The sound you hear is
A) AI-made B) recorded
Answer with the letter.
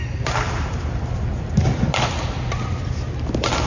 B